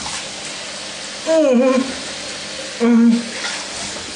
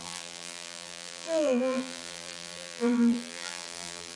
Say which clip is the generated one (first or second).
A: second